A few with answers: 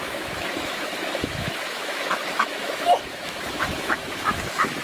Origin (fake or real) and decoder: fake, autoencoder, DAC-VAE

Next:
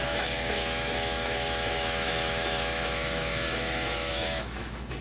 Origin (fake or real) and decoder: fake, autoencoder, DAC-VAE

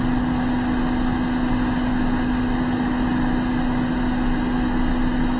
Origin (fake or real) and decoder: real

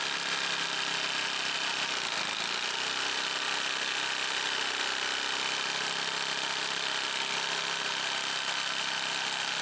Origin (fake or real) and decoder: real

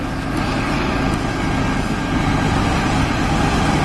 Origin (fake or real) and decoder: real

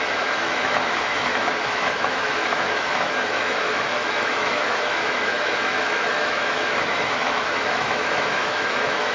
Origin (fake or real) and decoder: fake, autoencoder, DAC-VAE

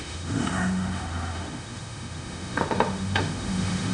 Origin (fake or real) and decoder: fake, autoencoder, DAC-VAE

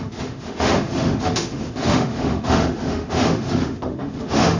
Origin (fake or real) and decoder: fake, autoencoder, DAC-VAE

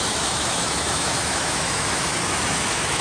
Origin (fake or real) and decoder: fake, autoencoder, DAC-VAE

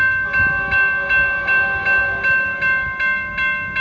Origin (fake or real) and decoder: real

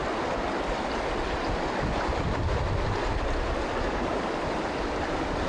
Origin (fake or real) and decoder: real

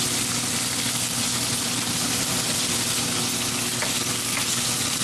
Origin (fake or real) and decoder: real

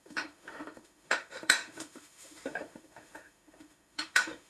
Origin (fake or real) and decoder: fake, autoencoder, DAC-VAE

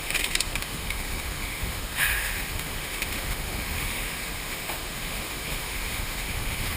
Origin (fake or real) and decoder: fake, autoencoder, DAC-VAE